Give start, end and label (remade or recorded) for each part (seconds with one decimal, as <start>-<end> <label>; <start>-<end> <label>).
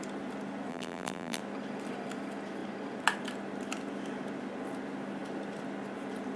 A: 0.0-0.7 recorded; 0.7-1.4 remade; 1.4-6.4 recorded